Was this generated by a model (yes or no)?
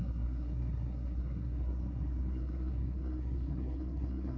yes